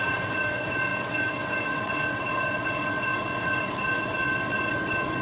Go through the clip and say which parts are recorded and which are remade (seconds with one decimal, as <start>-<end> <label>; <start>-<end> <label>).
0.0-5.2 remade